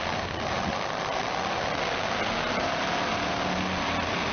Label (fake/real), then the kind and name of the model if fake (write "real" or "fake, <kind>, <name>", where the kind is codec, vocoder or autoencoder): real